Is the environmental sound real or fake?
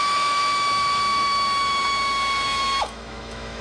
fake